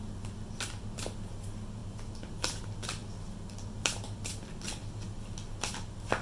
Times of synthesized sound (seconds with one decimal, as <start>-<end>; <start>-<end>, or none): none